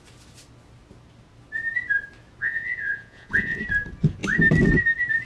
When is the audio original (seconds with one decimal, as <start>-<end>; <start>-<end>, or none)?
0.0-2.4; 3.6-5.2